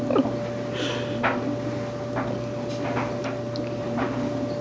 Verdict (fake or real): real